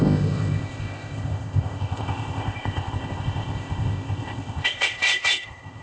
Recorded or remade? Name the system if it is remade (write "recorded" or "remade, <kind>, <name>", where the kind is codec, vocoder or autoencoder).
remade, codec, ZipCodec